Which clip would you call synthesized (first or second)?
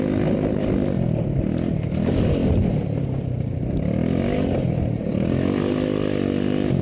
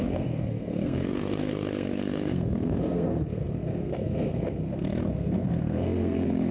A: second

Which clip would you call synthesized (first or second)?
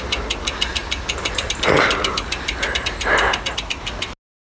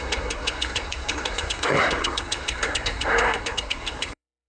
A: second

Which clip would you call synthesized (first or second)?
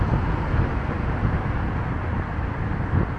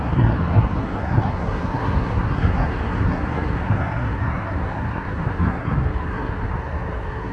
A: second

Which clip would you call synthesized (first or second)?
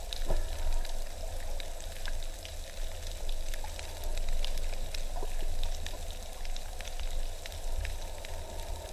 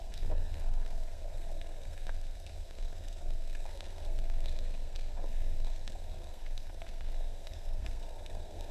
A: second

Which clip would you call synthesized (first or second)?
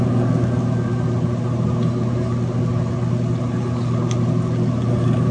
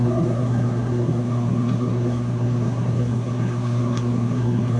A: second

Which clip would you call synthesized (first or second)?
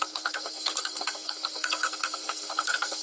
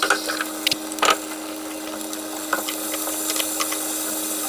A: first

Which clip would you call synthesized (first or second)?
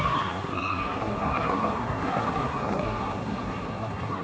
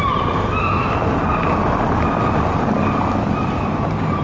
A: first